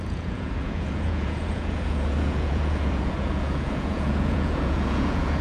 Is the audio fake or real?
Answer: fake